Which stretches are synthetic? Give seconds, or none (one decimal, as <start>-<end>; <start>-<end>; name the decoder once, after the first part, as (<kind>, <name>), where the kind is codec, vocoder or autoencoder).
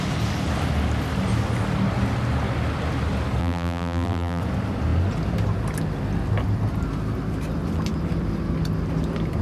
3.4-4.4 (vocoder, BigVGAN v2)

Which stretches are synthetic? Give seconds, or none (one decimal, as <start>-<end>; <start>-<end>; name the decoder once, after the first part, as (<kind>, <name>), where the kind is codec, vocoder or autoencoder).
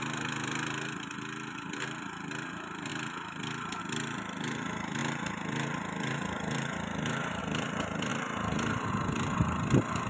0.0-10.1 (vocoder, BigVGAN v2)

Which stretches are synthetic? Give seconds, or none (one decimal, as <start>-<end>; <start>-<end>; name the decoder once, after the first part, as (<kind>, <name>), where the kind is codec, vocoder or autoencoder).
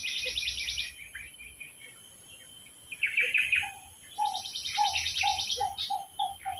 0.0-2.0 (vocoder, BigVGAN v2); 3.7-5.3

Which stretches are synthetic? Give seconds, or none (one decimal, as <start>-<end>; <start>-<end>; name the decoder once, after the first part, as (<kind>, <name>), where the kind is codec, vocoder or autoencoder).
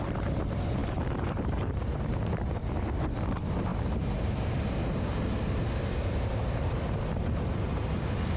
0.8-2.7 (vocoder, BigVGAN v2); 3.7-7.5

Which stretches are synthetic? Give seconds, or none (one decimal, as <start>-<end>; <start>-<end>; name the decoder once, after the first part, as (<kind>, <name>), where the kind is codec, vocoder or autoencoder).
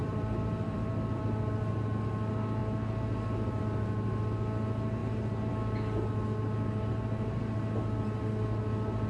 0.0-1.2 (vocoder, BigVGAN v2)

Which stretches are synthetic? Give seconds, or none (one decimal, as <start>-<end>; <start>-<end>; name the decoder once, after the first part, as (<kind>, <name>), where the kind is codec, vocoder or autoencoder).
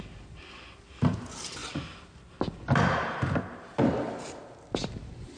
none